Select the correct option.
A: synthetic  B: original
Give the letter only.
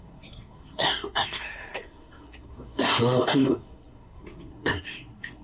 A